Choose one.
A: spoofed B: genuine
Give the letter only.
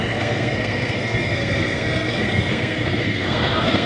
A